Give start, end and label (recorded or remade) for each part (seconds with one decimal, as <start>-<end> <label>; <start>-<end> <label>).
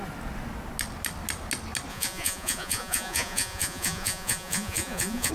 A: 0.0-1.9 recorded; 1.9-5.3 remade